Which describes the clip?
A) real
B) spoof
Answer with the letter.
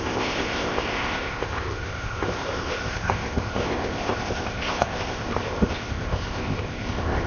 B